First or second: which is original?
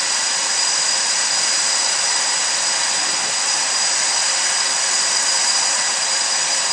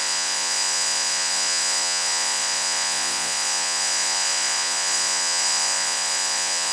first